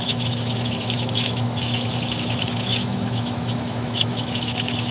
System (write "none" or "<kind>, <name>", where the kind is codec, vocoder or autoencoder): autoencoder, DAC-VAE